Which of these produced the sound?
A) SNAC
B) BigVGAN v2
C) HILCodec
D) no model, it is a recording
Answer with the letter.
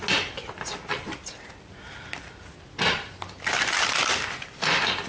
D